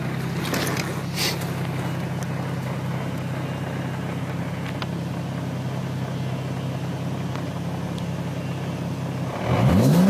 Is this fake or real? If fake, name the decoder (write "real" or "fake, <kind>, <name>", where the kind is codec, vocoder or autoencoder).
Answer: real